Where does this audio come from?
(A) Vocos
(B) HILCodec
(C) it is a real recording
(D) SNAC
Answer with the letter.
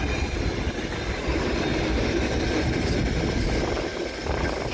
C